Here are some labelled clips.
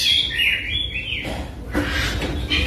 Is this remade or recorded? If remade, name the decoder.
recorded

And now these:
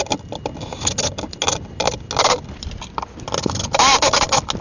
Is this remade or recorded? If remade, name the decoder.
recorded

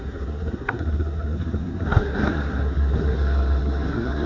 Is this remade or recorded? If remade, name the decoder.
remade, codec, SNAC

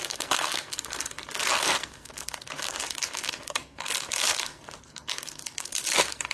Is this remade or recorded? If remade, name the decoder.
remade, codec, SNAC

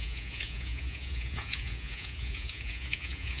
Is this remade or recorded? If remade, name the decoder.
remade, vocoder, Vocos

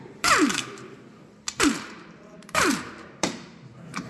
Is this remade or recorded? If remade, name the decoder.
remade, vocoder, BigVGAN v2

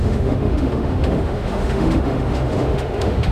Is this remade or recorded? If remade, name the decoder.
remade, autoencoder, DAC-VAE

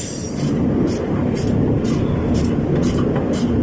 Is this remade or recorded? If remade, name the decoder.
recorded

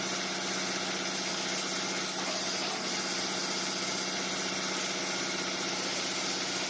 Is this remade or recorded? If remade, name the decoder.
recorded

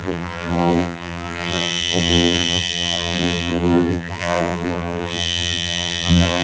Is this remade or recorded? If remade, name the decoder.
remade, vocoder, BigVGAN v2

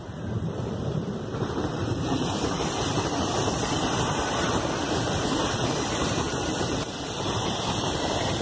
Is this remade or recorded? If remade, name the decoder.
remade, vocoder, BigVGAN v2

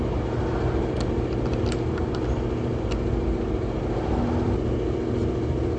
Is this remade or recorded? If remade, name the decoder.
recorded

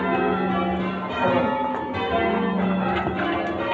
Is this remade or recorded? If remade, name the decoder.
recorded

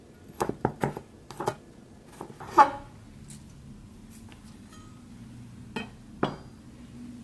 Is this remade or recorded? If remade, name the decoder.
recorded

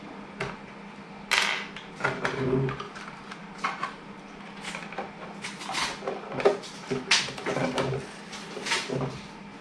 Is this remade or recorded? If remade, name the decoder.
recorded